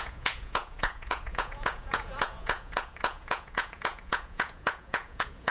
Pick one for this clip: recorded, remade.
remade